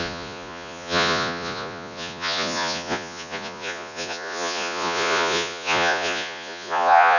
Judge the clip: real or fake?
fake